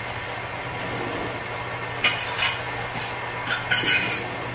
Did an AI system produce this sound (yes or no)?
no